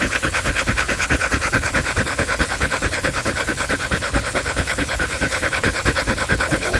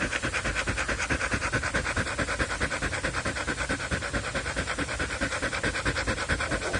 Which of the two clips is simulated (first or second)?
first